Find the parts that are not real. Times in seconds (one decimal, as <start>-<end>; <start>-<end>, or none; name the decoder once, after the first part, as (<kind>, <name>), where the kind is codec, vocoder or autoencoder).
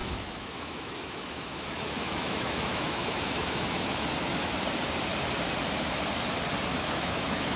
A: 0.0-4.1 (autoencoder, DAC-VAE); 6.7-7.6